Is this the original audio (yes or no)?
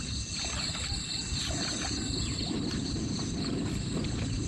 no